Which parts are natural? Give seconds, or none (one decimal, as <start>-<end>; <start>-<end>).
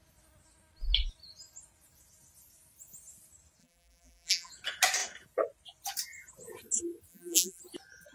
0.0-3.6; 4.5-7.1; 7.6-8.1